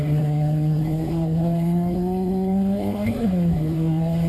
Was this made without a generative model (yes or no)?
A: no